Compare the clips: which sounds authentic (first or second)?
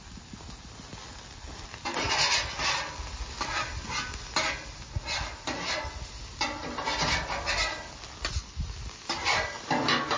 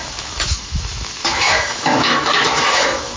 first